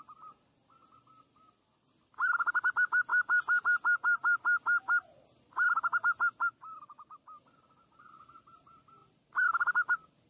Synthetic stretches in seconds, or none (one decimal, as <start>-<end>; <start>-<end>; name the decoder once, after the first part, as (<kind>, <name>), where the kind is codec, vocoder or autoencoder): none